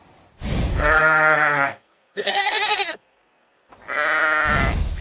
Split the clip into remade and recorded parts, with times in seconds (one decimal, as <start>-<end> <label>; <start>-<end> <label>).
0.0-0.7 recorded; 0.7-3.7 remade; 3.7-5.0 recorded